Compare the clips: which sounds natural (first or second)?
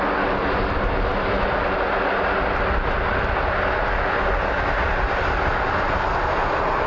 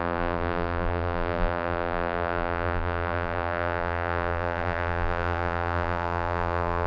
first